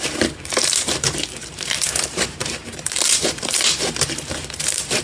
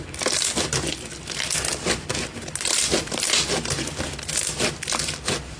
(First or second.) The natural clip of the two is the second